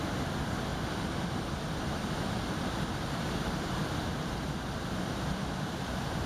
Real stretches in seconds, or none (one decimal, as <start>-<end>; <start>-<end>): 0.0-6.3